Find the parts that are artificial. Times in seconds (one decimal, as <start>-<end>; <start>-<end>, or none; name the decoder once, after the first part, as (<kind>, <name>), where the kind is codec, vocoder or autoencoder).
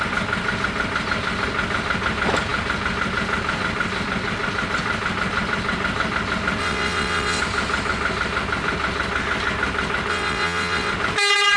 6.6-7.4 (vocoder, WaveNeXt); 10.1-10.9